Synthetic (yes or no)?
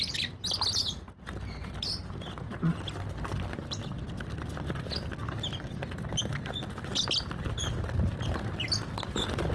no